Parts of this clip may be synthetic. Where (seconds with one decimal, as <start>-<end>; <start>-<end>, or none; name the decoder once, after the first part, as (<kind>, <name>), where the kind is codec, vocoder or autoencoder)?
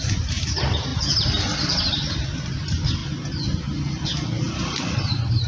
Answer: 0.0-0.9 (vocoder, BigVGAN v2); 1.8-3.0; 4.9-5.5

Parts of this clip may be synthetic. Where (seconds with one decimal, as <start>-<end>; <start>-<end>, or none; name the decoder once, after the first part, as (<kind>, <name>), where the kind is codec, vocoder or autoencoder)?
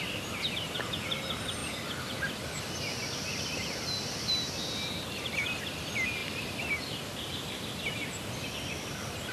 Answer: none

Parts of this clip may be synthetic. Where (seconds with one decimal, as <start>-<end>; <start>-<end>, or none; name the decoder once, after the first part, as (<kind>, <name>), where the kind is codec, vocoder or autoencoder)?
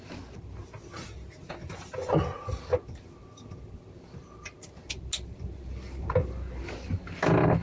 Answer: none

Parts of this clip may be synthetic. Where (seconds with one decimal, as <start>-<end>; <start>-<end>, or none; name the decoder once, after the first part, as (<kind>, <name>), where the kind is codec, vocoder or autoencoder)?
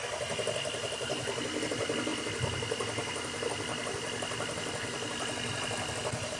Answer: none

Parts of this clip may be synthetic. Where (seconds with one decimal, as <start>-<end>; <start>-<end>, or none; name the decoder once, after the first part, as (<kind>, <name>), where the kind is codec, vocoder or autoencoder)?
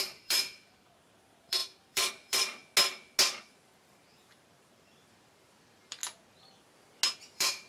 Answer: 0.0-2.6 (vocoder, BigVGAN v2); 3.4-6.0; 7.3-7.7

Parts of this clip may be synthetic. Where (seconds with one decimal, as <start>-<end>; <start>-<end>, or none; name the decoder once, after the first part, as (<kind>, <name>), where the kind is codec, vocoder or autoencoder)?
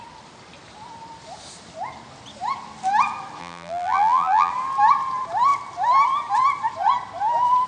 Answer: 3.4-4.5 (vocoder, BigVGAN v2)